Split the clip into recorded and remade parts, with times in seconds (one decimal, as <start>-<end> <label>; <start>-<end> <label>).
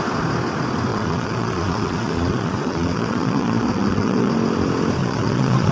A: 0.0-0.9 recorded; 0.9-4.3 remade; 4.3-5.0 recorded; 5.0-5.7 remade